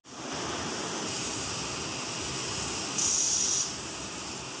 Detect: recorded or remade recorded